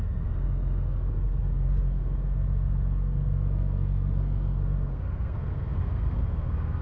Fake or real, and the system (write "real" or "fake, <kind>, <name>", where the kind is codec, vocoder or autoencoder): fake, codec, SNAC